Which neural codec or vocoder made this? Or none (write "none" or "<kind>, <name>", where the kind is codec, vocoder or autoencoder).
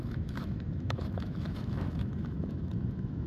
autoencoder, DAC-VAE